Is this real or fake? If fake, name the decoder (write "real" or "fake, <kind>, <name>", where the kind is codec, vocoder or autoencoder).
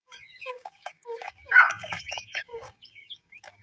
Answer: fake, codec, DAC